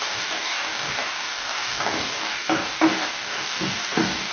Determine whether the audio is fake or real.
fake